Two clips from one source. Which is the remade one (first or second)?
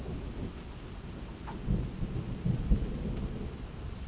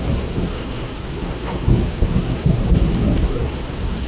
second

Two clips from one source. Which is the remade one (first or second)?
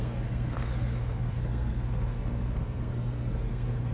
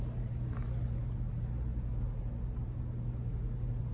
first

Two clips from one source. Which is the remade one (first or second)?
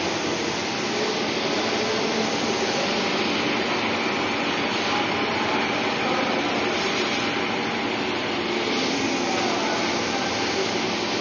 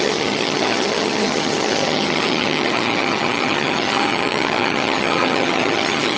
second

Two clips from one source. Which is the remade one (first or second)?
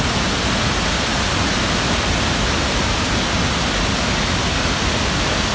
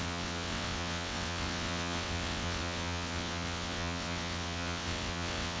second